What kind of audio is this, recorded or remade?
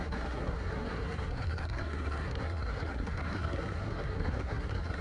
remade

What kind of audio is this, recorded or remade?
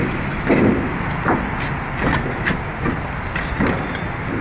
recorded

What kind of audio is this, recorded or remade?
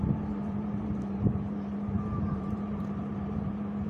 remade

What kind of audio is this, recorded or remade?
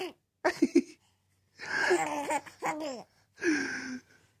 recorded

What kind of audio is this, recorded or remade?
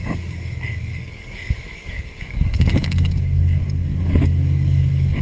remade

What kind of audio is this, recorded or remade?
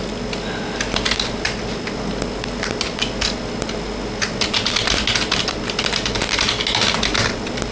recorded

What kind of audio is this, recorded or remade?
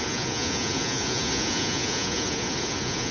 remade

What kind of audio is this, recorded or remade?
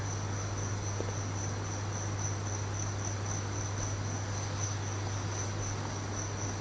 recorded